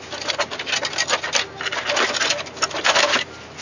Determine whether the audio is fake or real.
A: real